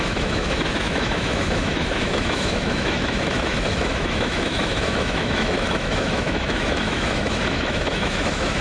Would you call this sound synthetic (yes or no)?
yes